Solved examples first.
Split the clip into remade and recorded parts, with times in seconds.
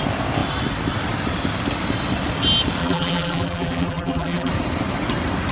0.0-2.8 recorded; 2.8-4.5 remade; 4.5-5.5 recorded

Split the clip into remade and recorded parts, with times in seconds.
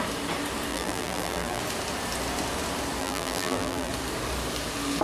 0.0-0.7 recorded; 0.7-1.6 remade; 1.6-3.0 recorded; 3.0-3.9 remade; 3.9-5.0 recorded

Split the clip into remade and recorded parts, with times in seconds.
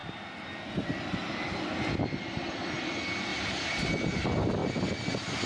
0.0-3.3 recorded; 3.3-3.9 remade; 3.9-5.5 recorded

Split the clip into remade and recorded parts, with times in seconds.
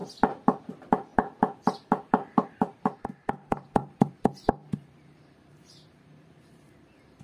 0.0-0.7 recorded; 0.7-1.1 remade; 1.1-2.1 recorded; 2.1-7.2 remade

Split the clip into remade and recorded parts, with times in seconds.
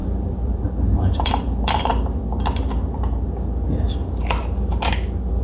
0.0-1.9 remade; 1.9-5.4 recorded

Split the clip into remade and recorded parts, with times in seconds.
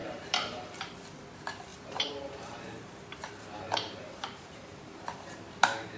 0.0-0.8 remade; 0.8-1.7 recorded; 1.7-5.3 remade; 5.3-6.0 recorded